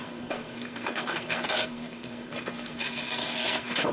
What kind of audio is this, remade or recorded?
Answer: remade